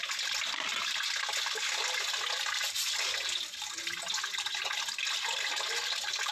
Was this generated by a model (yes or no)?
no